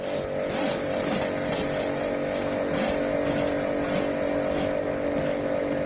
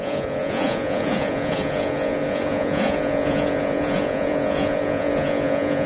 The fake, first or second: second